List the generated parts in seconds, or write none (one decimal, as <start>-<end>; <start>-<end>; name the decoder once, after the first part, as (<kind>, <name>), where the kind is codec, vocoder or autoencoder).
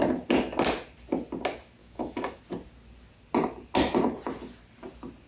1.8-2.4 (autoencoder, DAC-VAE)